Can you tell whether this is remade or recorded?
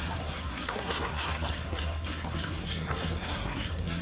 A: remade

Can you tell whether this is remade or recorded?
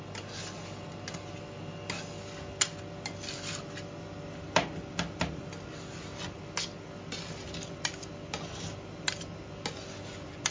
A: recorded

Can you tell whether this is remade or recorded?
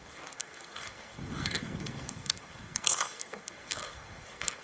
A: remade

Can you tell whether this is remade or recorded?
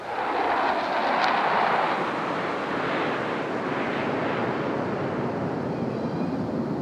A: recorded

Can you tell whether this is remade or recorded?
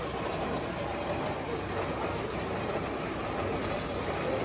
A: recorded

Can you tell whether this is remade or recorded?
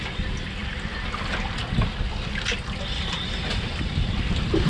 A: recorded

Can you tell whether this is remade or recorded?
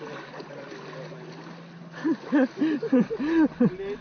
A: recorded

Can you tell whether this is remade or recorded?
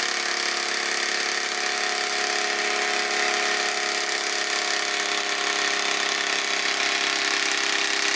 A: recorded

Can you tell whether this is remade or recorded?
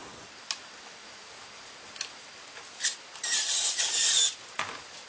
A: recorded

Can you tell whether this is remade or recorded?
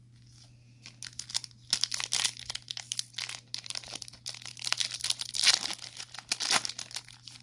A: recorded